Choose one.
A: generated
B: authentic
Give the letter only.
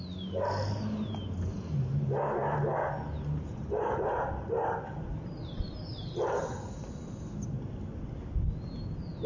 B